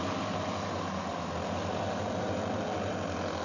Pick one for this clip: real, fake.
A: real